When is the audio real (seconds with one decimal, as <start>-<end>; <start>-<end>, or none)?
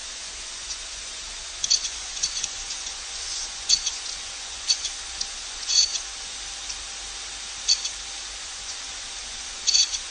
6.4-8.4